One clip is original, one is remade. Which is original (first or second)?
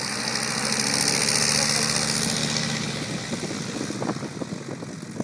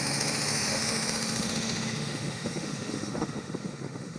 first